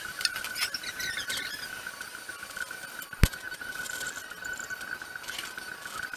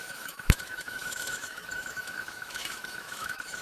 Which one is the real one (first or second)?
first